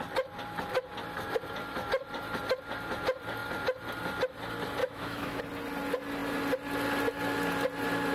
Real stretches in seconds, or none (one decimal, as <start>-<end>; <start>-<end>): 0.0-4.8; 5.4-8.1

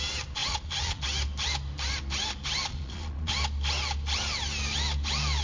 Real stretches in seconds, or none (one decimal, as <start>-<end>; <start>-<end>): 0.0-0.4; 1.0-2.7; 3.3-5.4